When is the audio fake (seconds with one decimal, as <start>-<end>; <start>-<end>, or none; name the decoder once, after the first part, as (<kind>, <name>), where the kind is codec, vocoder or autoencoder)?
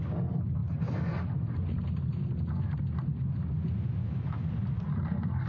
4.0-4.5 (autoencoder, DAC-VAE)